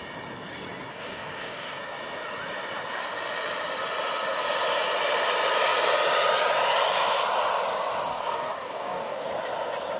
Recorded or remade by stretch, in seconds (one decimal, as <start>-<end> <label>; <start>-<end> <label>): 0.0-0.9 recorded; 0.9-1.8 remade; 1.8-8.1 recorded; 8.1-9.3 remade; 9.3-10.0 recorded